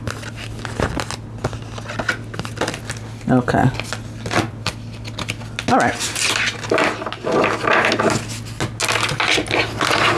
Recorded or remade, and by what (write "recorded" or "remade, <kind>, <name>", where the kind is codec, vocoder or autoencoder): recorded